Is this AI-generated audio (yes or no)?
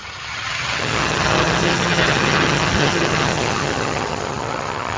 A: yes